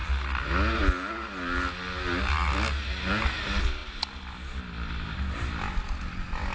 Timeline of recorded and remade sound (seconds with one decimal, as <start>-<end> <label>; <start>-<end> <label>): 0.0-6.5 recorded